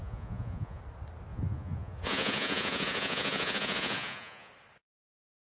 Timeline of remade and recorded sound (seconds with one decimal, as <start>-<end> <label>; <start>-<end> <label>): 0.0-0.8 remade; 0.8-1.3 recorded; 1.3-4.5 remade; 4.5-5.4 recorded